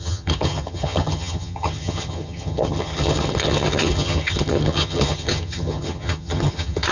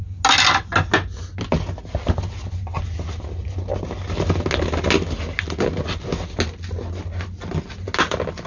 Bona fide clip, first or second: second